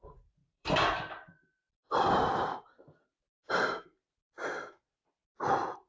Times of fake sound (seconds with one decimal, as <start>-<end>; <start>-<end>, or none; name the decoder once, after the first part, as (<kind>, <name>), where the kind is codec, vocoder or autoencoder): 0.0-5.9 (vocoder, BigVGAN v2)